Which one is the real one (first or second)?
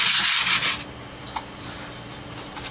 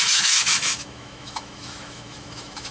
first